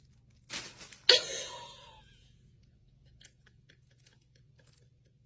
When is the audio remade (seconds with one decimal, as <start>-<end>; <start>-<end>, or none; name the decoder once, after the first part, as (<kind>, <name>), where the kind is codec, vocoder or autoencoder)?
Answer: 1.3-4.5 (vocoder, Vocos)